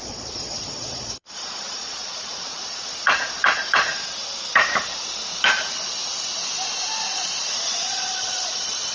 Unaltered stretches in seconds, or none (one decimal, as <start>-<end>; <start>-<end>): 2.9-7.1